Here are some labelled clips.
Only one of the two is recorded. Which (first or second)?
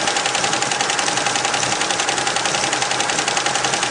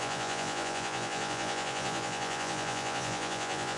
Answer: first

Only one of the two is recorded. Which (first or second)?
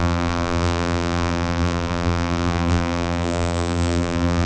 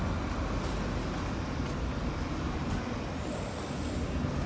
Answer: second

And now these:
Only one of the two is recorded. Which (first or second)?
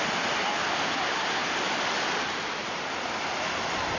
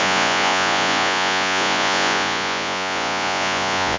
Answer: first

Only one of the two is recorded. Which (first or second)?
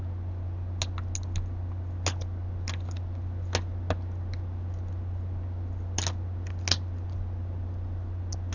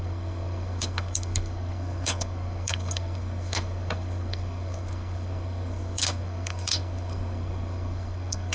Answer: first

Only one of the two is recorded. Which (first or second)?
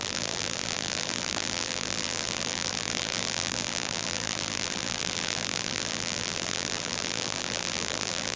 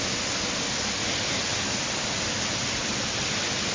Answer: second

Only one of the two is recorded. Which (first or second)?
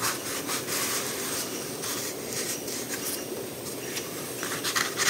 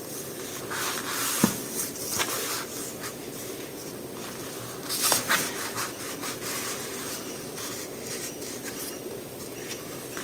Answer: second